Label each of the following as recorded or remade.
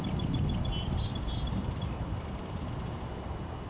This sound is recorded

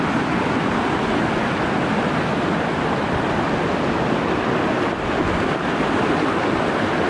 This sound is recorded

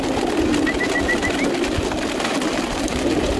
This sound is recorded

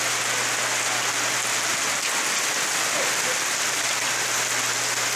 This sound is recorded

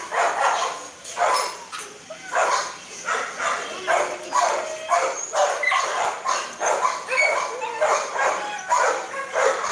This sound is recorded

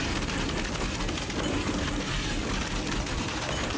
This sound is recorded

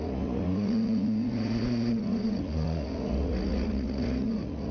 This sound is remade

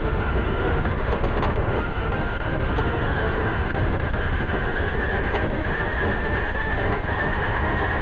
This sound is remade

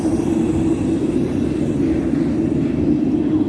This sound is recorded